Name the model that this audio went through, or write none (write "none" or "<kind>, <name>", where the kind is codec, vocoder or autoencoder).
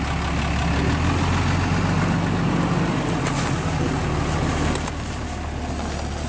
none